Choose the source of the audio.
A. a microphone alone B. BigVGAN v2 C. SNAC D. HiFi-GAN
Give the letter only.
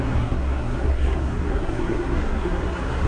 C